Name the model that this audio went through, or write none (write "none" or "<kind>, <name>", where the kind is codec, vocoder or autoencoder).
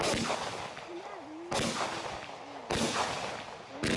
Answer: none